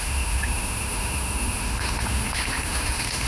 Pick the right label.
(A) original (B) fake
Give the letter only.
B